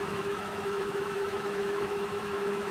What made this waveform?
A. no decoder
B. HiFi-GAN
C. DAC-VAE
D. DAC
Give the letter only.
C